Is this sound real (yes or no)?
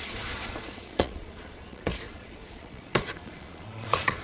no